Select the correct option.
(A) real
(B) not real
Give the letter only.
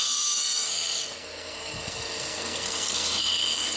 B